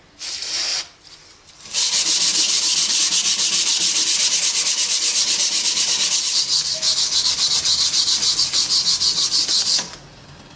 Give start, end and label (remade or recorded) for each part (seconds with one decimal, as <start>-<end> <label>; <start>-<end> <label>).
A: 0.0-0.7 recorded; 0.7-3.0 remade; 3.0-5.1 recorded; 5.1-8.6 remade; 8.6-10.6 recorded